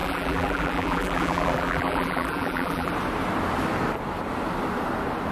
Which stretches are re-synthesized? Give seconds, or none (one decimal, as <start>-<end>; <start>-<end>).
0.0-2.9